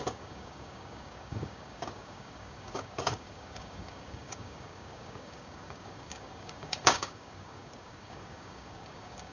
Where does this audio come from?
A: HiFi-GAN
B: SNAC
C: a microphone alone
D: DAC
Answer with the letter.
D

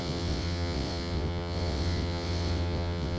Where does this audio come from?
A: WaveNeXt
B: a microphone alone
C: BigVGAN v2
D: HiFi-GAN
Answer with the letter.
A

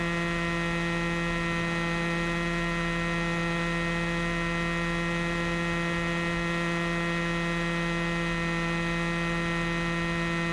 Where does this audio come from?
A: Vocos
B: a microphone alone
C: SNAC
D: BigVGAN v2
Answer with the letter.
B